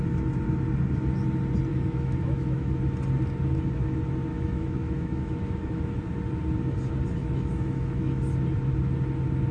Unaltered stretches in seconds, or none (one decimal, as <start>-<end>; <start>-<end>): 0.0-1.7; 2.8-4.3; 6.0-7.2; 8.2-9.5